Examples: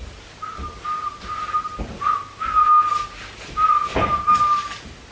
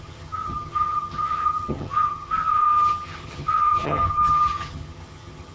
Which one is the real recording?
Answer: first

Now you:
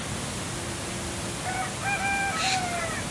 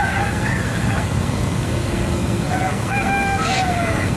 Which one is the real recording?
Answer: first